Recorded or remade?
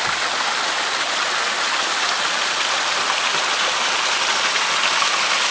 recorded